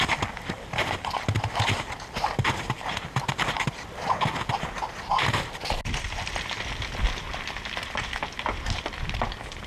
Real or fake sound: real